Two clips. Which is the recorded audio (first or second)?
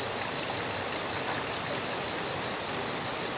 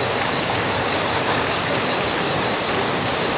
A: first